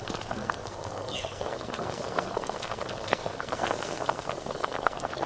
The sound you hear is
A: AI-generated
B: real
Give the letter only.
A